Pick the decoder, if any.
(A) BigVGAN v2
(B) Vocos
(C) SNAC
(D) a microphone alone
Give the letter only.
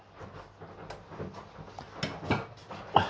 D